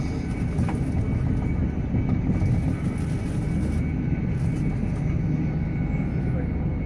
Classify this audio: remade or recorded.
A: recorded